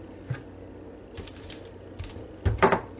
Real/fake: real